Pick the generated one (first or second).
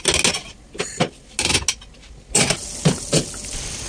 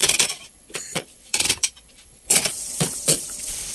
second